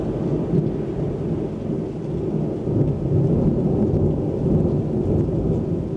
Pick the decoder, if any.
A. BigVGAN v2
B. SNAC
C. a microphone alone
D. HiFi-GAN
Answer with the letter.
C